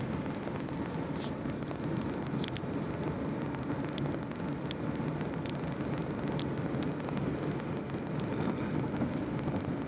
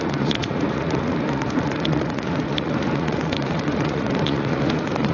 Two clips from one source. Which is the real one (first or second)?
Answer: first